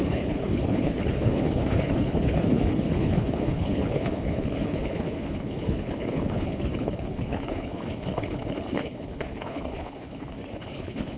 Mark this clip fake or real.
fake